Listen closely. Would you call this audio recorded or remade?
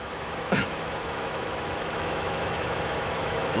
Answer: remade